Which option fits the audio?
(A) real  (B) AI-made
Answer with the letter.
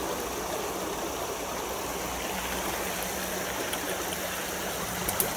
A